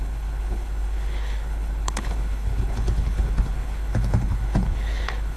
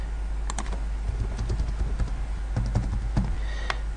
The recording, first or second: second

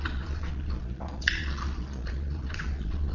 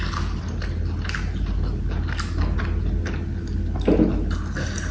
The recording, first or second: second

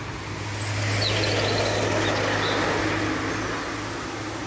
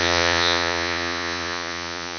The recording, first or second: first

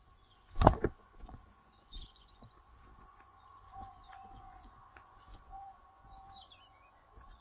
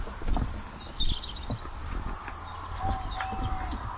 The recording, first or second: second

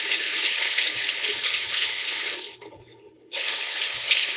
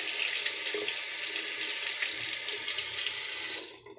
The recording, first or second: second